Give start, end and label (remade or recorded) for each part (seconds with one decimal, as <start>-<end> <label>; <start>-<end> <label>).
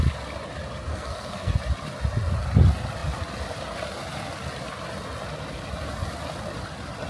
0.0-0.9 recorded; 0.9-1.5 remade; 1.5-7.1 recorded